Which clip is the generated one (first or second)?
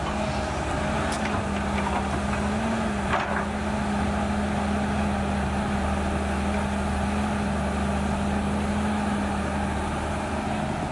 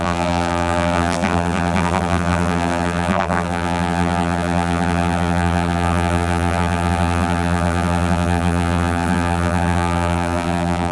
second